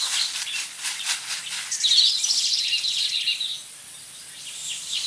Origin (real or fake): real